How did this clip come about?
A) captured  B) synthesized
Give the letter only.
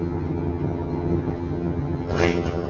B